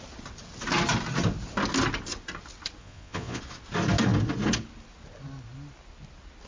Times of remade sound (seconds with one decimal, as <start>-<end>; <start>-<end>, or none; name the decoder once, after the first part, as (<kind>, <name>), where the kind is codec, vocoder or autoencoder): 2.8-3.4 (vocoder, Vocos)